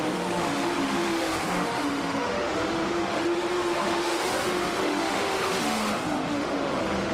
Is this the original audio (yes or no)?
no